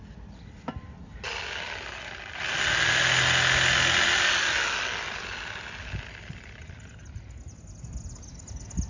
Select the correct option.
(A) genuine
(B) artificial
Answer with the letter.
A